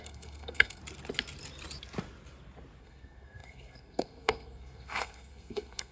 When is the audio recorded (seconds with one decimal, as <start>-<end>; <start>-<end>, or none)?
0.8-2.8

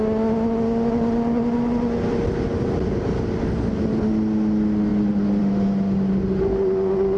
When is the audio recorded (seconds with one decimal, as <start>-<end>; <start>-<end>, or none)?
0.0-7.2

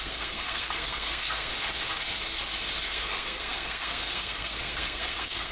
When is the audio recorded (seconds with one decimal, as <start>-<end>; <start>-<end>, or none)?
1.5-2.9

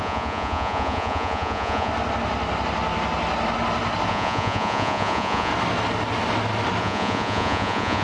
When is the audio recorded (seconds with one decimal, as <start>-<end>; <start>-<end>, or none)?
1.9-4.1; 5.5-6.8

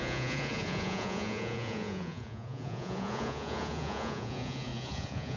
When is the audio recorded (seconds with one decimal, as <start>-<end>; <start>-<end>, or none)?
none

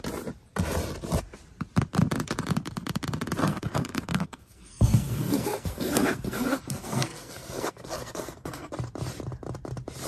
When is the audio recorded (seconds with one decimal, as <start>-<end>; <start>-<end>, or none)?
0.0-3.4; 8.7-10.1

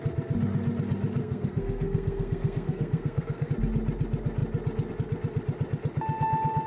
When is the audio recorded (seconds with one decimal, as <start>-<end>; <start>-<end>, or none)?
0.0-1.2; 3.5-6.7

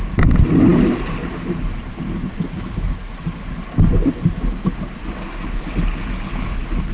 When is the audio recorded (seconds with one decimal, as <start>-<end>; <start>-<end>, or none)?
0.0-6.9